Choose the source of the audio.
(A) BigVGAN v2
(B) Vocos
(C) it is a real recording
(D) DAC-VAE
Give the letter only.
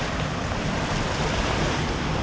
A